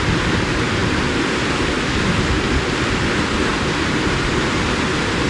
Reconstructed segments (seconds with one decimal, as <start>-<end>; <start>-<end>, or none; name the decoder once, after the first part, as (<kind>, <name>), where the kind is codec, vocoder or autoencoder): 3.5-4.3 (vocoder, BigVGAN v2)